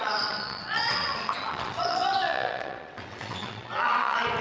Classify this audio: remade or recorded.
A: remade